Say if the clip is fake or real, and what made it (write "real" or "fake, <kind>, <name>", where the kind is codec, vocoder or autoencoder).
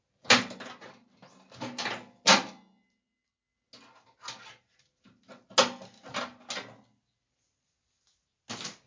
real